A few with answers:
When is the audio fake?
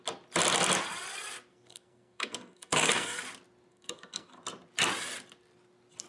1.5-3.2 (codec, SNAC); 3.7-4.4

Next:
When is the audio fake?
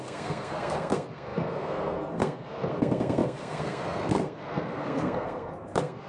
0.0-6.1 (codec, SNAC)